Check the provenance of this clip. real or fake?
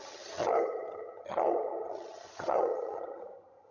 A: fake